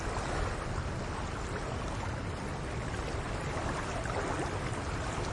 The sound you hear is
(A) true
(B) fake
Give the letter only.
A